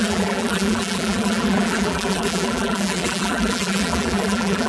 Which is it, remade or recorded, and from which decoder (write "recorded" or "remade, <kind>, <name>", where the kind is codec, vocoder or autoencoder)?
remade, vocoder, BigVGAN v2